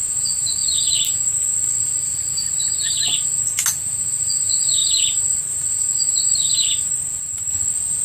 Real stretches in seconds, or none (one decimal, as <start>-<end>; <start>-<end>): 0.0-8.0